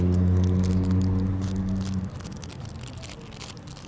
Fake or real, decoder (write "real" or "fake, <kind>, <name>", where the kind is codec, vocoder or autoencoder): real